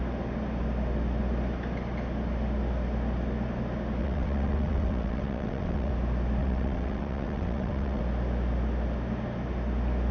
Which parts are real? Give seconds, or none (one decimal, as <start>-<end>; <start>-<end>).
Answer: 0.0-4.0; 5.9-6.4; 8.0-10.1